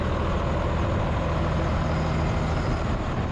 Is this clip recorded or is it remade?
recorded